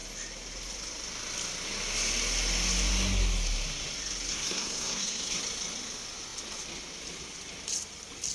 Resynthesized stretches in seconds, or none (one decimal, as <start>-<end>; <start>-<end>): 4.3-5.4